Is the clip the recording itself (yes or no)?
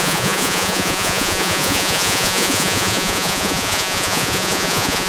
no